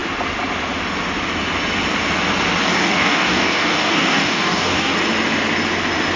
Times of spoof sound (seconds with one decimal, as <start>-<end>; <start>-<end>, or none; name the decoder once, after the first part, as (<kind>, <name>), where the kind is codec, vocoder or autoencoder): 2.6-4.9 (codec, DAC)